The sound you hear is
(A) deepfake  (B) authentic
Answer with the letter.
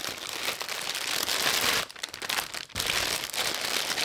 B